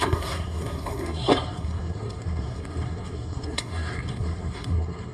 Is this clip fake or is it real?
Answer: fake